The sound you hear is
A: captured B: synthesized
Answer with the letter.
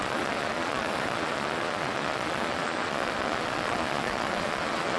B